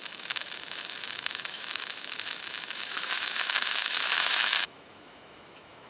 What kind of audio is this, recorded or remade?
remade